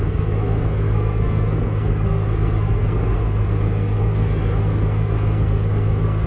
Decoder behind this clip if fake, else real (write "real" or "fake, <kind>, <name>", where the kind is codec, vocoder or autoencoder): fake, codec, SNAC